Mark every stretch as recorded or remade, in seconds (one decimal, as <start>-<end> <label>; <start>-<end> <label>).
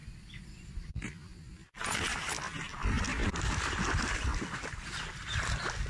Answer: 0.0-5.9 recorded